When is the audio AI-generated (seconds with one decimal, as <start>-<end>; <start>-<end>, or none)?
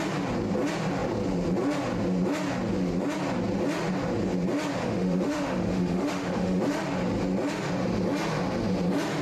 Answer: 4.8-6.6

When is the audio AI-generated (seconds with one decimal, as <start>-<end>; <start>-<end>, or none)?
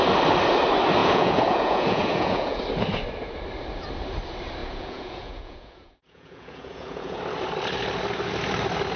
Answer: 1.0-2.6; 4.6-7.2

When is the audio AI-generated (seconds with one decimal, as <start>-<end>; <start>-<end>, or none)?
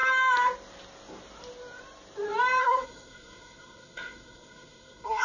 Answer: 2.6-5.2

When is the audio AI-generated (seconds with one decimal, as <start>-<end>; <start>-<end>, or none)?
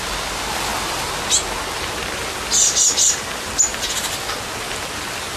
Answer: none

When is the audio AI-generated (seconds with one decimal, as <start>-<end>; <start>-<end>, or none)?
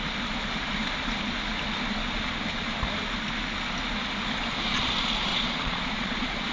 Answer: 5.3-6.5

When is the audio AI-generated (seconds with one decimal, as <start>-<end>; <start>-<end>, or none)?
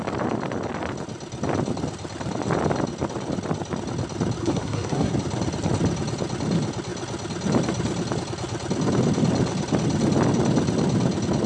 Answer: 4.4-5.1